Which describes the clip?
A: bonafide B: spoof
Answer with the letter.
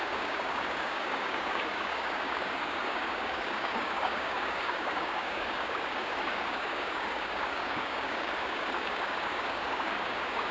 B